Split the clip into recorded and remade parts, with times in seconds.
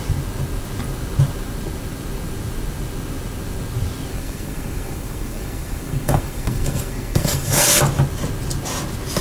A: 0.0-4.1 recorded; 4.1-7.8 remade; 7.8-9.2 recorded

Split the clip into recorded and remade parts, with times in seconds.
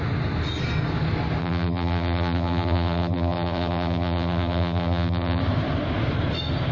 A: 0.0-1.4 recorded; 1.4-5.4 remade; 5.4-6.7 recorded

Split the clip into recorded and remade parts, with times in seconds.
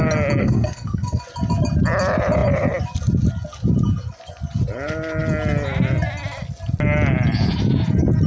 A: 0.0-0.4 recorded; 0.4-1.2 remade; 1.2-8.3 recorded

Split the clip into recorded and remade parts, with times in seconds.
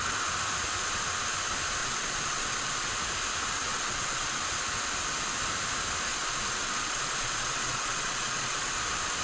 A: 0.0-1.8 recorded; 1.8-2.9 remade; 2.9-3.7 recorded; 3.7-4.4 remade; 4.4-6.1 recorded; 6.1-8.7 remade; 8.7-9.2 recorded